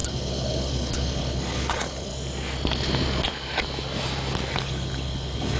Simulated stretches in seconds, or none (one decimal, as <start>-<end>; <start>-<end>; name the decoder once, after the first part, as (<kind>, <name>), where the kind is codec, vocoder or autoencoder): 0.0-2.1 (codec, HILCodec); 4.5-5.6